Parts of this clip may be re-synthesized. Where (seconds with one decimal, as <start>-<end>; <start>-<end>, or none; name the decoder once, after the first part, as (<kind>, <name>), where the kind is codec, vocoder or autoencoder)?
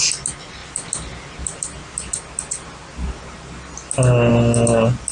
none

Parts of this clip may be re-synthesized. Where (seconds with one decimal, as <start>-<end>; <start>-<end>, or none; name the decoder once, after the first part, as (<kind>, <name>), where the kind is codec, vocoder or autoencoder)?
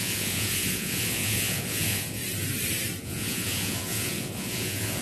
0.0-2.2 (vocoder, Vocos); 3.0-5.0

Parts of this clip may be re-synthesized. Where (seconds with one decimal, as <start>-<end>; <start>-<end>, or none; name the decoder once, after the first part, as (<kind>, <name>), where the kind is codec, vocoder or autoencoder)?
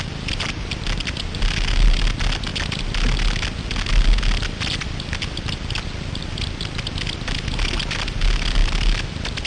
none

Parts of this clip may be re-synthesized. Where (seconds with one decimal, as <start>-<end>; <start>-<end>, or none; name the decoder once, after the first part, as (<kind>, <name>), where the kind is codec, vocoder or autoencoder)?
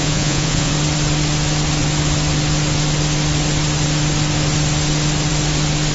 0.0-0.7 (vocoder, Vocos)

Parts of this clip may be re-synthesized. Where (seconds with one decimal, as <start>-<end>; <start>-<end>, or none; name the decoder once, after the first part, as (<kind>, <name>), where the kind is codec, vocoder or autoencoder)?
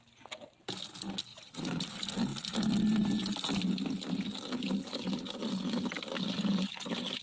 1.3-1.9 (vocoder, Vocos)